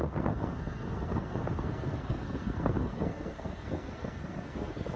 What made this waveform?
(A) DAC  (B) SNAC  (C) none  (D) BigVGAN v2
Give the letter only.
B